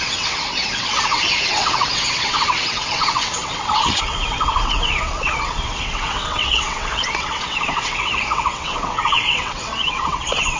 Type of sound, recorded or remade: remade